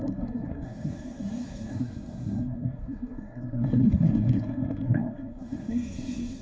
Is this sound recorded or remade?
remade